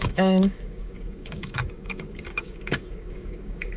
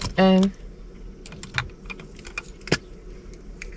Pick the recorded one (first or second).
second